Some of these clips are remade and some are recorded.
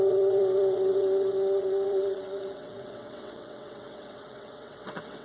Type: remade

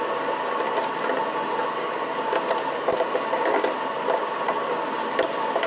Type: recorded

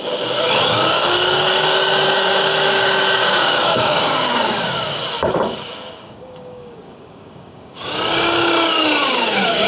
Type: remade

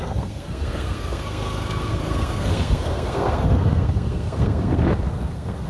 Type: remade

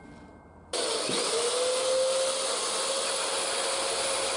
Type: recorded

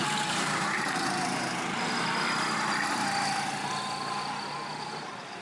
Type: recorded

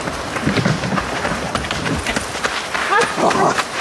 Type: remade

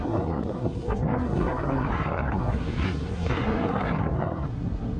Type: remade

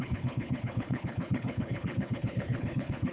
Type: remade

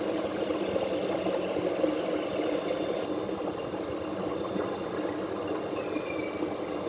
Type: recorded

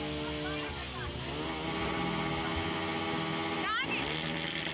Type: recorded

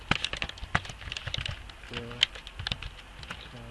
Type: recorded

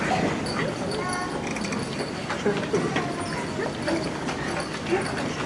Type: recorded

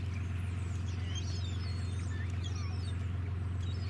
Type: recorded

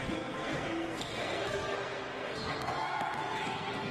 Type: remade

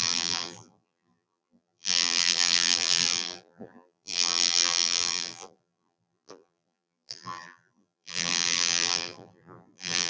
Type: remade